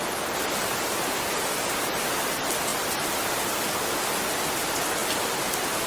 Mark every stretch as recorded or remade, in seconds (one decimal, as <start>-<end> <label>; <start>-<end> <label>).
0.0-5.9 recorded